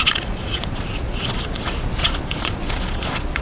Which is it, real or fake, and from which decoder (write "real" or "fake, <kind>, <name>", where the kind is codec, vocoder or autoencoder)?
fake, vocoder, Vocos